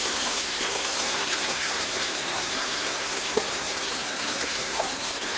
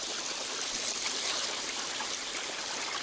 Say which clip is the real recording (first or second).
second